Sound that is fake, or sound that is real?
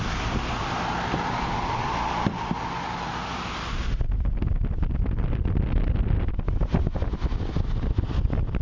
real